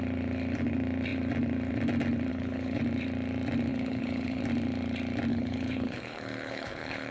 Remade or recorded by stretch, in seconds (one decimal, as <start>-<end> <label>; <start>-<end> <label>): 0.0-2.3 recorded; 2.3-2.8 remade; 2.8-3.7 recorded; 3.7-4.4 remade; 4.4-5.3 recorded; 5.3-7.1 remade